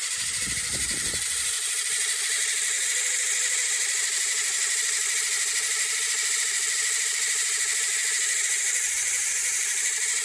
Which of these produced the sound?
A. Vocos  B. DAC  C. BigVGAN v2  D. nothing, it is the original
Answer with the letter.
C